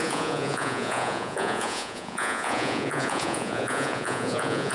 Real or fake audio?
fake